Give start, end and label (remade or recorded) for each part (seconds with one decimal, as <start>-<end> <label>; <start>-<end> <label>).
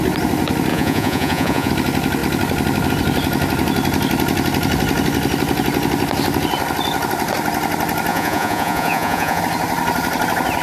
0.0-0.7 recorded; 0.7-1.7 remade; 1.7-8.1 recorded; 8.1-9.4 remade; 9.4-10.6 recorded